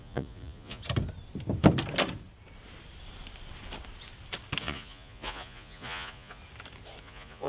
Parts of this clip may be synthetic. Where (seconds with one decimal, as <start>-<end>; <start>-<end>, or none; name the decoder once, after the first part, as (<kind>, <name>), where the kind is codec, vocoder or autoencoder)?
0.0-0.8 (vocoder, Vocos); 4.6-6.4; 7.0-7.5